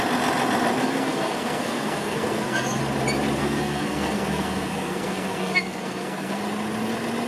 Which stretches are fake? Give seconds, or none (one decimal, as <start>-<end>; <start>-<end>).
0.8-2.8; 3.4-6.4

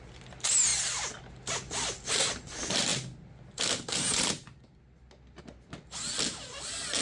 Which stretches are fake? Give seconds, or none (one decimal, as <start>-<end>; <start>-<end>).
none

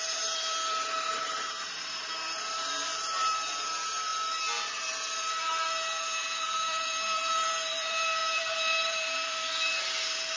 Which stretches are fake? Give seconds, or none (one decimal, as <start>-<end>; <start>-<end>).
0.0-4.1; 5.4-10.4

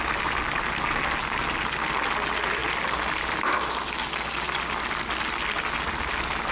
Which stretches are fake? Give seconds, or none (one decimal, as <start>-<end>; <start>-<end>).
none